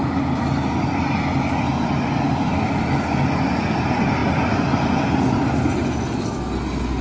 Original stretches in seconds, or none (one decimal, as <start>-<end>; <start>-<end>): 0.0-7.0